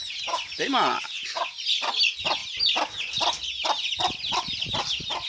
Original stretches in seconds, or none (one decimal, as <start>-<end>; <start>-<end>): 0.0-5.3